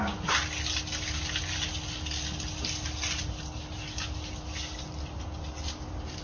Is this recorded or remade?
recorded